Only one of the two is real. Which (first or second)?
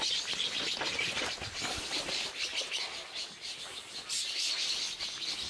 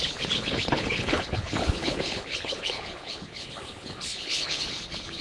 first